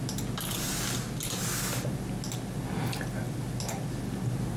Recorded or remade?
recorded